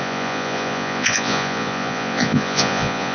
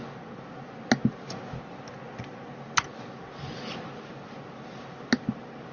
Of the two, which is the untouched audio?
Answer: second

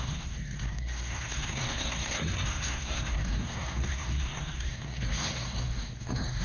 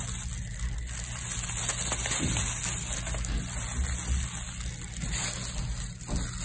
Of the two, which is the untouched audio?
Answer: second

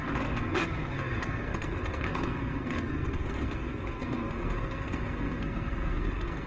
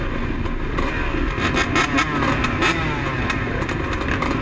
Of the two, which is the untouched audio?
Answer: second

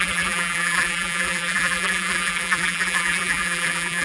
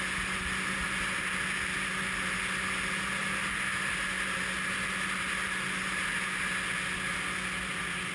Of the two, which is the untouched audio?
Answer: second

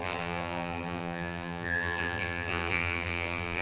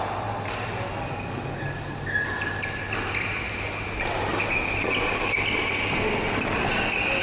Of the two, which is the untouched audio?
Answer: second